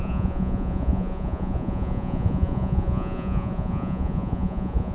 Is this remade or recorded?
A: remade